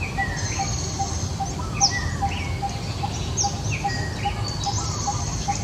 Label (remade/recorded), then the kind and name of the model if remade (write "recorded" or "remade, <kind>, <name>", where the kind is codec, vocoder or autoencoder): recorded